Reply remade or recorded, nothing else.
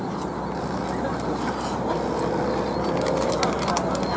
recorded